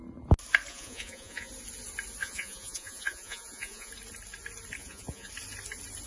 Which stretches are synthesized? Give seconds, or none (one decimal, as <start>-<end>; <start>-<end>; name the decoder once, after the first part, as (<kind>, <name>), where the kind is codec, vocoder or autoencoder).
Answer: 0.7-1.5 (vocoder, Vocos); 2.2-3.9; 4.8-5.3